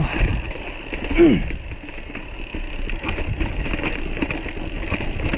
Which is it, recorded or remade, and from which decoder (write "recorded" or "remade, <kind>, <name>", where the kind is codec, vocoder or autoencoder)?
recorded